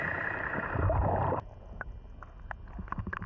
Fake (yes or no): no